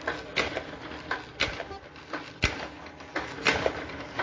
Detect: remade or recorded recorded